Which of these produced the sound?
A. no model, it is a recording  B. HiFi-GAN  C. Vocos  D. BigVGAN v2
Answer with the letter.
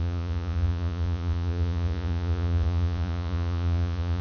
C